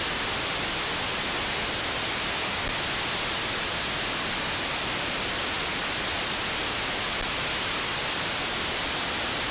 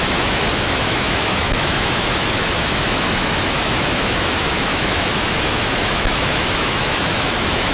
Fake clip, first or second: second